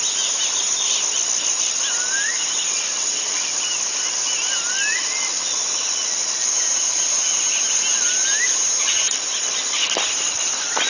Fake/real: real